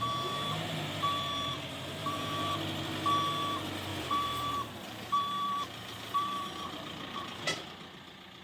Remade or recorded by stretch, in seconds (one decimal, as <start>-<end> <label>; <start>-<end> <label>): 0.0-2.0 recorded; 2.0-2.5 remade; 2.5-3.9 recorded; 3.9-7.7 remade; 7.7-8.4 recorded